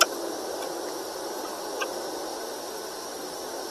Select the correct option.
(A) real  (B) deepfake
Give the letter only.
A